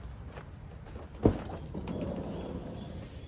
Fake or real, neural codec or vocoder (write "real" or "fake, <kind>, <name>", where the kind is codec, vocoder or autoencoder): real